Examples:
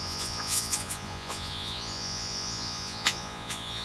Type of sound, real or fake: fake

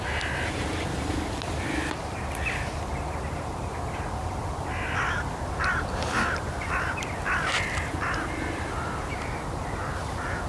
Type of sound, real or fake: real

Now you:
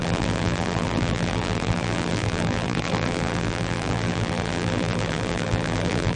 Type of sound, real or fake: fake